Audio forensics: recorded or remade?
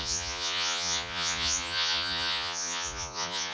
remade